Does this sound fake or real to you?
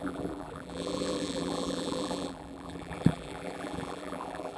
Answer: fake